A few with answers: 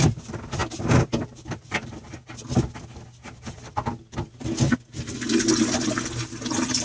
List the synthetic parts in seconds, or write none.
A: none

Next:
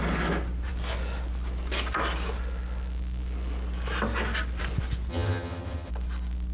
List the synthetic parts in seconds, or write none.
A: 5.1-5.9

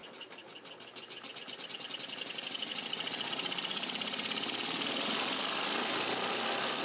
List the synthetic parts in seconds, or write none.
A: none

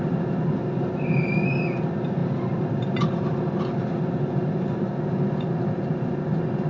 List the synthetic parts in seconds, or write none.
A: none

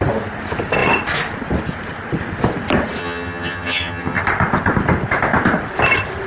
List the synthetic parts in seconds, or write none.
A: 3.0-4.2

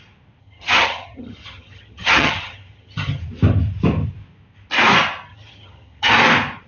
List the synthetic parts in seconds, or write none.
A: 0.4-3.2; 5.3-6.1

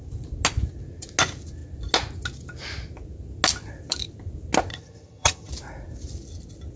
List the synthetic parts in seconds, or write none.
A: 4.7-5.5